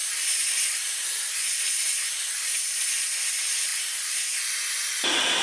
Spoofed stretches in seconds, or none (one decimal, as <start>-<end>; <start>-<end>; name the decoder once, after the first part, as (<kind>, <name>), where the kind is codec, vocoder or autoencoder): none